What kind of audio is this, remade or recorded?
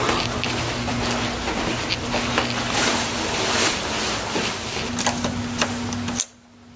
recorded